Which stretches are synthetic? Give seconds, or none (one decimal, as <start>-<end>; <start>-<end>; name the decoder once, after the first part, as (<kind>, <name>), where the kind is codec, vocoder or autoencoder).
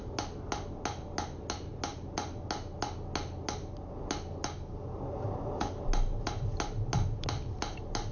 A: none